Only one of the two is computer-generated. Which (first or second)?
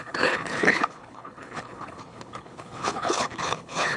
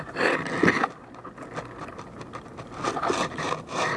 first